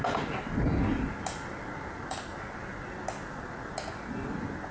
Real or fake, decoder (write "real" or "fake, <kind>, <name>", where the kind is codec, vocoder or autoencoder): real